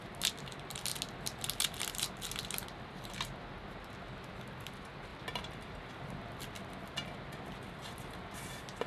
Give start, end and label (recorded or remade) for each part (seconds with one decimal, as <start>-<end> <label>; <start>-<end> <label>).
0.0-8.9 recorded